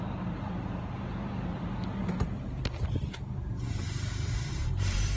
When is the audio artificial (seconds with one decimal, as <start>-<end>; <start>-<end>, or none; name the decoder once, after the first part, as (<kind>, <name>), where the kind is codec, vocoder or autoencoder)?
2.0-5.2 (vocoder, BigVGAN v2)